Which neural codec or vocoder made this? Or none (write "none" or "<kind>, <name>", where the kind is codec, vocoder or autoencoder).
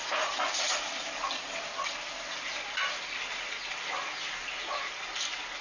none